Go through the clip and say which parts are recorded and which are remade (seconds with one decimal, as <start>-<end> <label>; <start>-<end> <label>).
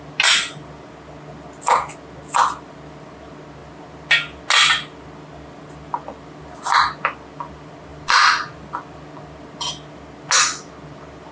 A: 0.0-11.3 recorded